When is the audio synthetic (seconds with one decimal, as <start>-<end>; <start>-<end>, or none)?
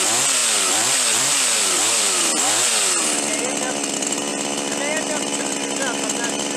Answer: none